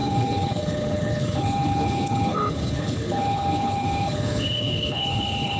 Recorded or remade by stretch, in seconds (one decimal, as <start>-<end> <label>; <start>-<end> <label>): 0.0-5.6 remade